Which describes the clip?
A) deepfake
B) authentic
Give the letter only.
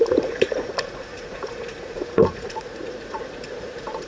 A